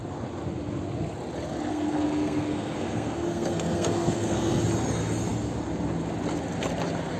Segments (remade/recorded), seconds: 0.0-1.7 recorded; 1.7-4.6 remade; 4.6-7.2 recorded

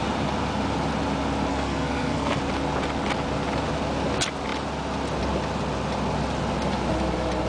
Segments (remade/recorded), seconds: 0.0-1.5 recorded; 1.5-2.4 remade; 2.4-7.5 recorded

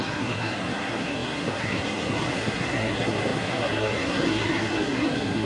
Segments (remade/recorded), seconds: 0.0-5.5 remade

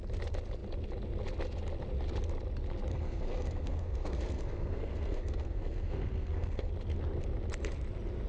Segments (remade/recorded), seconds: 0.0-2.9 recorded; 2.9-6.7 remade; 6.7-8.3 recorded

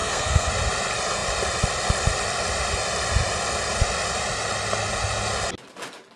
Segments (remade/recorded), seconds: 0.0-0.5 remade; 0.5-6.2 recorded

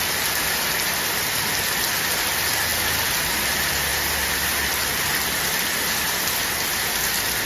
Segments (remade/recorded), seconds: 0.0-7.5 recorded